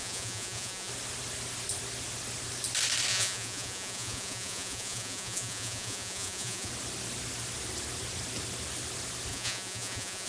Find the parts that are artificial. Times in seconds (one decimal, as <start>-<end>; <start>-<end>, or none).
0.0-0.9; 3.1-6.7; 9.3-10.3